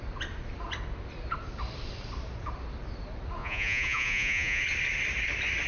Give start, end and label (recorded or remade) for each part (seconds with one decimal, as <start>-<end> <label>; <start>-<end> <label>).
0.0-3.4 recorded; 3.4-4.6 remade; 4.6-5.7 recorded